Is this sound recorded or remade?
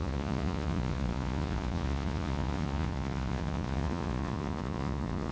remade